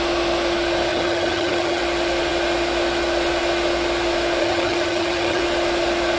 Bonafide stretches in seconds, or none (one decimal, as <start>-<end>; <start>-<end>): 0.0-0.9; 1.8-4.4; 5.4-6.2